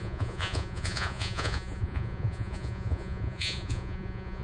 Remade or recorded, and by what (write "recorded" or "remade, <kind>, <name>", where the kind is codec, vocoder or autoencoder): remade, vocoder, Vocos